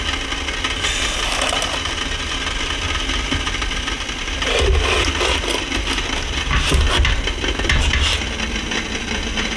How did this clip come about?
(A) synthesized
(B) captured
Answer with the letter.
B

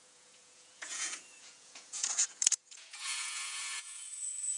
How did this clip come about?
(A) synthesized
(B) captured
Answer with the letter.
A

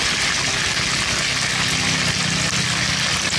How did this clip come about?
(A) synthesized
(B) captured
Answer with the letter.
B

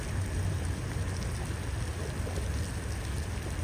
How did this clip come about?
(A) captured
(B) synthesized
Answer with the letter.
A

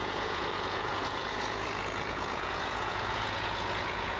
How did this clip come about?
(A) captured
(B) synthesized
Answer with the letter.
B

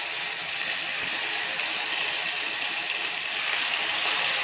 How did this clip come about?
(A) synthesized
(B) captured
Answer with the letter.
B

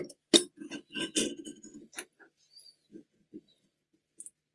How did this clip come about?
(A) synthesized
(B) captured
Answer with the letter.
B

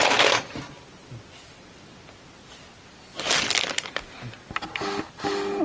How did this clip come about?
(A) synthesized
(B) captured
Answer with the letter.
B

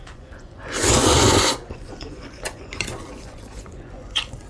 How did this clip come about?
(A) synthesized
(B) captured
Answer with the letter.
A